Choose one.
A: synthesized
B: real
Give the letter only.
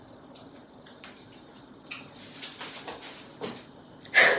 B